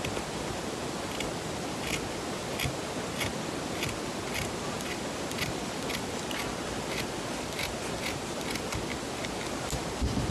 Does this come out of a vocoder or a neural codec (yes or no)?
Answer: no